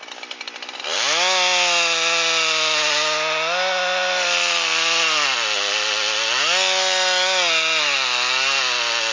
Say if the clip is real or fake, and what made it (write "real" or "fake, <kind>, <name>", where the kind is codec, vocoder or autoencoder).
real